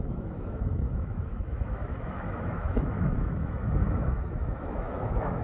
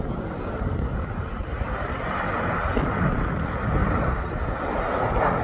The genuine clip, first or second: second